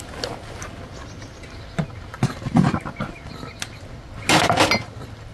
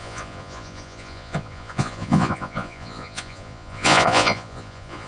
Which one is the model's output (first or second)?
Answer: second